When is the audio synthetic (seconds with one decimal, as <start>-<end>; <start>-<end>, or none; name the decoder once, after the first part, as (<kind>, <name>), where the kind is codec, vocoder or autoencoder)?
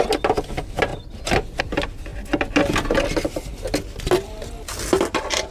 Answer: none